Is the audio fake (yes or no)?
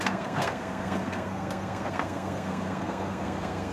yes